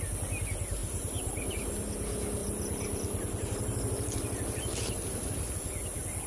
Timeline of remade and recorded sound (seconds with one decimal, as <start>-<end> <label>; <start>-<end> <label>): 0.0-0.8 recorded; 0.8-1.5 remade; 1.5-2.4 recorded; 2.4-5.5 remade; 5.5-6.3 recorded